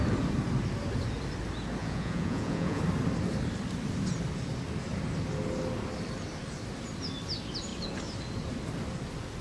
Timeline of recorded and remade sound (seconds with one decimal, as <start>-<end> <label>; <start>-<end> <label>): 0.0-1.8 recorded; 1.8-2.8 remade; 2.8-9.4 recorded